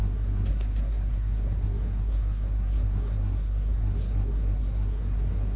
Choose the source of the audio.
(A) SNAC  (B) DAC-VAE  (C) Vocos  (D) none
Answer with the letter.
A